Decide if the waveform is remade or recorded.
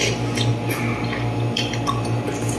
recorded